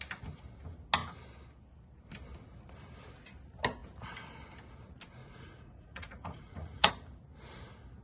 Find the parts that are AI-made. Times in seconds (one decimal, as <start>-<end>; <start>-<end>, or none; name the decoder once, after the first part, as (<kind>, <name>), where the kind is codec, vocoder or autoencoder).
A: 5.2-6.9 (vocoder, Vocos)